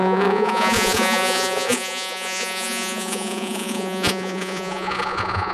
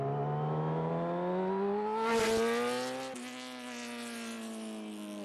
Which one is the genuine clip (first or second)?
second